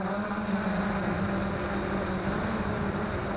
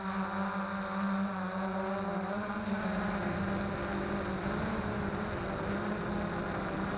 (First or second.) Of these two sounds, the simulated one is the first